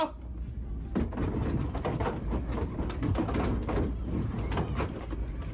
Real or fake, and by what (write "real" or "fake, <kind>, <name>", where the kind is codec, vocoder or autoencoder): real